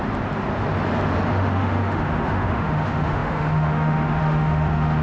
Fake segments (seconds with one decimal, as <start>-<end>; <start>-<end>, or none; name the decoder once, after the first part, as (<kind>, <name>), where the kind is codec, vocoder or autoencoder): 1.3-5.0 (autoencoder, DAC-VAE)